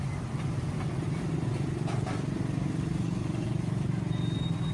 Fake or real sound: real